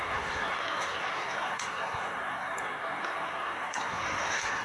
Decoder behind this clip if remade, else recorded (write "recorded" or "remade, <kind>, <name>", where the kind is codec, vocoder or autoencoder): remade, codec, SNAC